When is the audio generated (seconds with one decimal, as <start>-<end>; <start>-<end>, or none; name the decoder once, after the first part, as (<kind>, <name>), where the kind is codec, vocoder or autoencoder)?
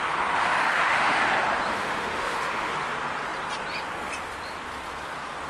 0.4-1.2 (autoencoder, DAC-VAE); 1.7-2.7